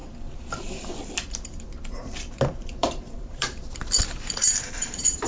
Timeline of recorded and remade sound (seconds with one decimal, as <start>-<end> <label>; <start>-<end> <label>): 0.0-2.8 recorded; 2.8-3.6 remade; 3.6-4.4 recorded; 4.4-5.3 remade

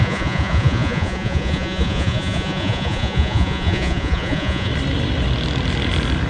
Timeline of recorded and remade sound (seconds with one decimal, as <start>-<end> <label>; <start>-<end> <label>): 0.0-4.7 remade; 4.7-6.3 recorded

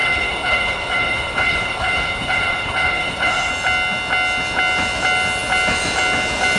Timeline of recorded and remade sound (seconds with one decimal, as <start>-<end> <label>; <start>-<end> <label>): 0.0-3.5 remade; 3.5-6.6 recorded

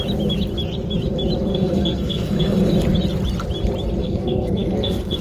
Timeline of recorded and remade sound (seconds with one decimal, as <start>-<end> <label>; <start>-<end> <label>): 0.0-1.5 recorded; 1.5-2.7 remade; 2.7-4.0 recorded; 4.0-5.2 remade

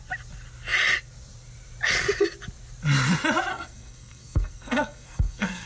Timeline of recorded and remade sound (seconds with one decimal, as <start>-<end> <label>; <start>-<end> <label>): 0.0-3.5 recorded; 3.5-5.7 remade

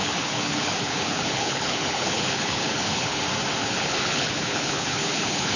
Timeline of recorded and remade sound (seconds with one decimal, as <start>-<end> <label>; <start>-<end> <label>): 0.0-3.2 remade; 3.2-3.6 recorded; 3.6-5.6 remade